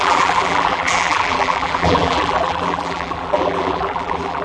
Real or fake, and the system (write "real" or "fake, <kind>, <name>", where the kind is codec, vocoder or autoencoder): fake, vocoder, BigVGAN v2